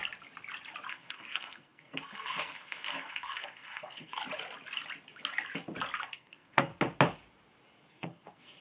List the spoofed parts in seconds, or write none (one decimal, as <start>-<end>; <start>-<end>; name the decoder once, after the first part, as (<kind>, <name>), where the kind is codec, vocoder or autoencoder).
0.9-4.2 (codec, SNAC); 6.0-6.7; 7.9-8.6